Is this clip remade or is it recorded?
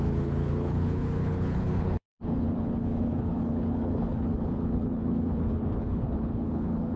remade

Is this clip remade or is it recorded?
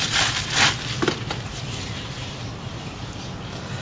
recorded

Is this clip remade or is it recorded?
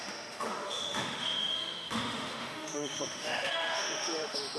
remade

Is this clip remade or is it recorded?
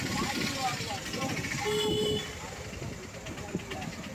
recorded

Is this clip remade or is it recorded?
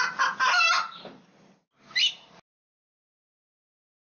recorded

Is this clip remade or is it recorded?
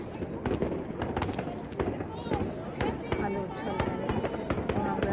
recorded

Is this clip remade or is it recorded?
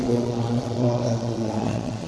remade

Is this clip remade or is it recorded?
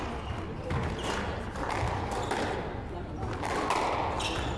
recorded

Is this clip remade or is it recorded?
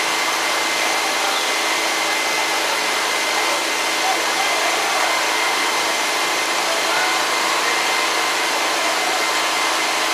recorded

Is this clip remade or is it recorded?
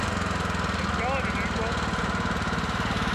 recorded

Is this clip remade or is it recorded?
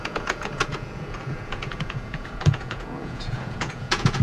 remade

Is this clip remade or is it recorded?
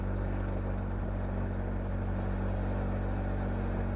recorded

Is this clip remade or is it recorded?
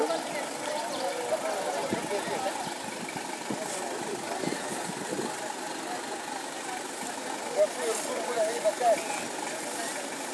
recorded